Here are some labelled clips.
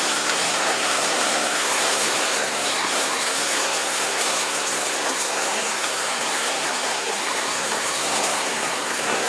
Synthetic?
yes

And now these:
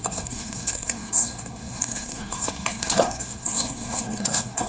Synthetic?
yes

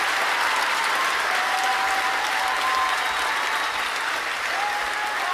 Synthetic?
no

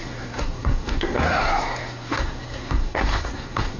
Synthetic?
yes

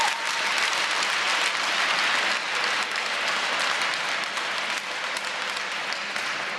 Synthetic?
no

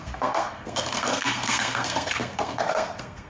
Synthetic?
yes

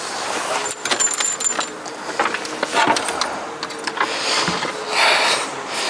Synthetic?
no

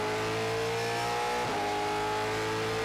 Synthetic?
no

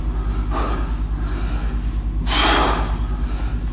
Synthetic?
no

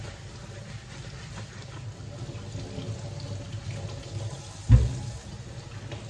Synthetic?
no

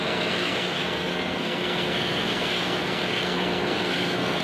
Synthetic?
yes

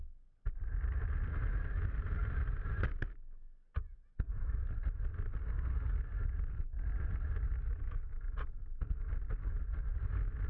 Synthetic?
no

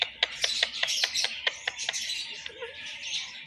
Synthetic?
no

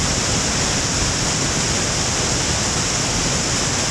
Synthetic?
no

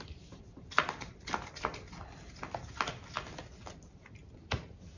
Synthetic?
no